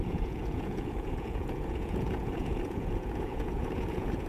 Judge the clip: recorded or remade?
remade